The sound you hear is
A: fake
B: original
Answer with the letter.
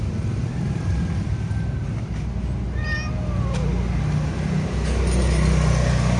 B